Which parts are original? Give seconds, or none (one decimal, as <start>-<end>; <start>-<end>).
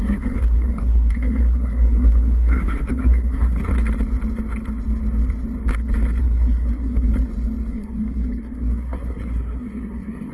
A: 3.7-6.2; 7.1-7.7